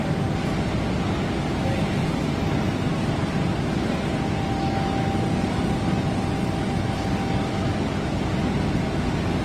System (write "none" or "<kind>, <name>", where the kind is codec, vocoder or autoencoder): none